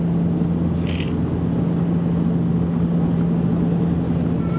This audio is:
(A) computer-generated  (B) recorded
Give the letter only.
B